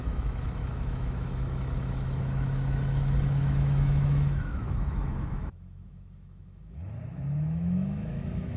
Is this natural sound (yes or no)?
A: no